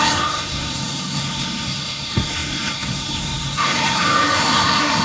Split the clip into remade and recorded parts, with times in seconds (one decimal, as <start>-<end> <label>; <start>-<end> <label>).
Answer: 0.0-5.0 remade